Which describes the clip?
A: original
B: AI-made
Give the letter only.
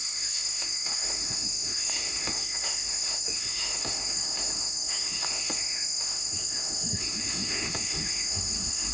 B